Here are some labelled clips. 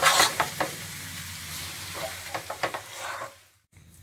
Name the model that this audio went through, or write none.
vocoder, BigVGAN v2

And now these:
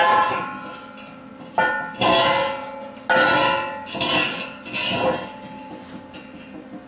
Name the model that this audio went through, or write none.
none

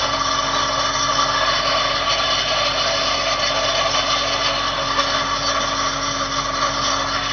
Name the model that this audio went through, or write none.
none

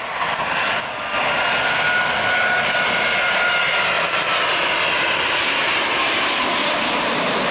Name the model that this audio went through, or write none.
none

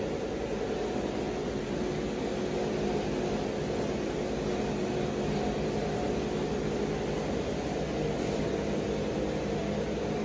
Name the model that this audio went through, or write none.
none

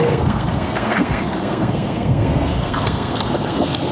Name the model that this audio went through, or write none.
codec, SNAC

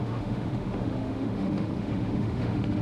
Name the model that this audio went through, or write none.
autoencoder, DAC-VAE